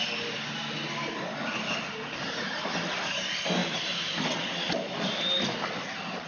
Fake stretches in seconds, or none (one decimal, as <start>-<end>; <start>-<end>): none